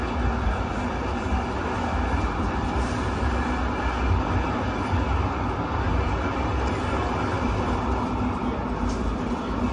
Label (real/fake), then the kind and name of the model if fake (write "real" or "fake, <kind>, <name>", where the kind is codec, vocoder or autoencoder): real